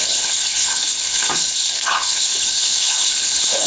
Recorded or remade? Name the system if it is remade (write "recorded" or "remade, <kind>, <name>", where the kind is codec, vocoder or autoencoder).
remade, codec, HILCodec